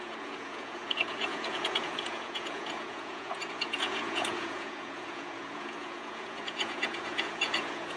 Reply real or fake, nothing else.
fake